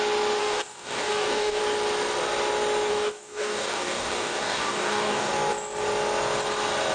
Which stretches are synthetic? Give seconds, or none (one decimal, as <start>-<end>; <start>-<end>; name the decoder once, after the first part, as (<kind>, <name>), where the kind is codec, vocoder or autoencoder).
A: 0.4-1.6 (codec, DAC); 2.9-5.3